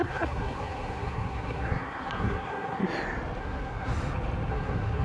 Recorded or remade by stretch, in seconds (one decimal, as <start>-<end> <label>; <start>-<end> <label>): 0.0-2.8 remade; 2.8-3.4 recorded; 3.4-3.9 remade; 3.9-4.5 recorded; 4.5-5.0 remade